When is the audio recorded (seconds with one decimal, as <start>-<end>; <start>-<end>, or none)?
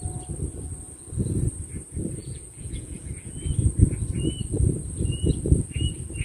0.0-2.2; 3.3-6.2